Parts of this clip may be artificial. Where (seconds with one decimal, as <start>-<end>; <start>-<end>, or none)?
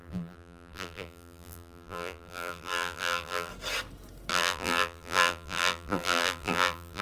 0.0-3.5; 4.3-7.0